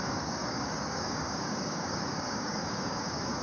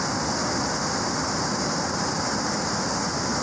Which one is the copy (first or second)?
first